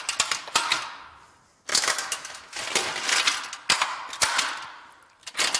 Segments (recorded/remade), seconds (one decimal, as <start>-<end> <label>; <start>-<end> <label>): 0.0-1.7 recorded; 1.7-2.6 remade; 2.6-5.6 recorded